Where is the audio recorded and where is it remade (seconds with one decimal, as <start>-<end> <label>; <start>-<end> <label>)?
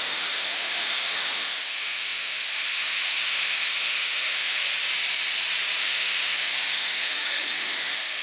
0.0-4.7 remade; 4.7-5.8 recorded; 5.8-8.2 remade